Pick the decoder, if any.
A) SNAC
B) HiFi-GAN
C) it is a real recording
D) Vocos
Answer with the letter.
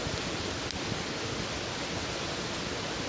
C